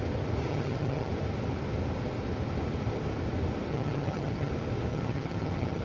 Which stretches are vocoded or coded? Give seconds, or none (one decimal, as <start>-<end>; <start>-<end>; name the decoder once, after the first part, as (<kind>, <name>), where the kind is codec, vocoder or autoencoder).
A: 0.5-1.1 (vocoder, HiFi-GAN); 3.7-4.5; 4.9-5.8